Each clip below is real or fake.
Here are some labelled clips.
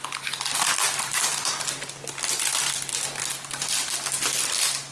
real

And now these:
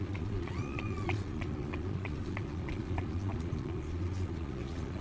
fake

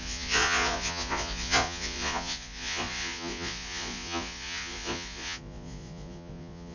fake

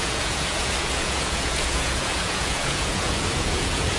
fake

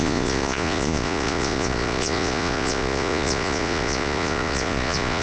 fake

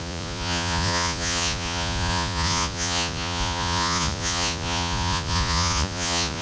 fake